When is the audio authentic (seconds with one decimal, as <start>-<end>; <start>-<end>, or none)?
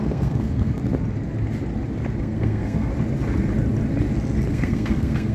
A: 0.8-2.2; 2.9-4.5